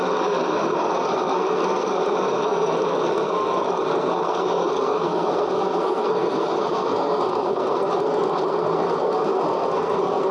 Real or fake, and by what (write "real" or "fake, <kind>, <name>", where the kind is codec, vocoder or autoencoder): fake, codec, SNAC